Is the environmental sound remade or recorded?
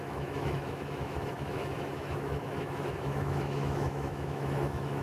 remade